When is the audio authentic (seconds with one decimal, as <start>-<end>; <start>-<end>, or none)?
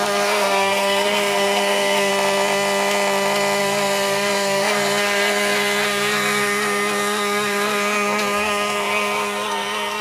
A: 2.1-3.6